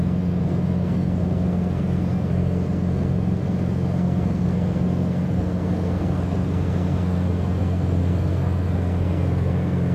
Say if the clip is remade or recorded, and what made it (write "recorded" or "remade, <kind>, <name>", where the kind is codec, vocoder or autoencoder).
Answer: remade, codec, SNAC